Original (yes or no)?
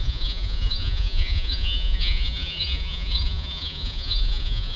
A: no